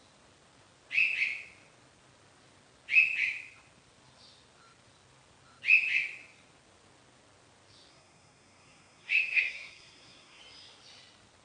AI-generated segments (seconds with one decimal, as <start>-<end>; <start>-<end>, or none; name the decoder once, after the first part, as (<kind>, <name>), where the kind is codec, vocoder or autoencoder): 7.9-10.4 (codec, SNAC)

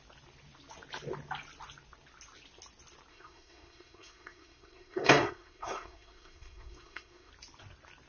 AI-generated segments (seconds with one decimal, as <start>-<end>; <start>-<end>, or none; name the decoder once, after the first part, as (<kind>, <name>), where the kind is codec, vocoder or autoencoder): 3.1-7.3 (codec, SNAC)

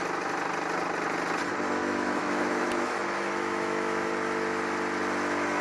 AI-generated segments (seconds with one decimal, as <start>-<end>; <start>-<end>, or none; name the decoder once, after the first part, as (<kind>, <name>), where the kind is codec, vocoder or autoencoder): 1.8-4.1 (autoencoder, DAC-VAE)

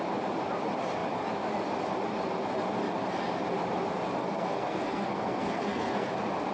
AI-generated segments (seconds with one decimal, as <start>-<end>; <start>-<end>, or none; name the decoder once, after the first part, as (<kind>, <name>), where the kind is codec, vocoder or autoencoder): 4.2-6.1 (codec, SNAC)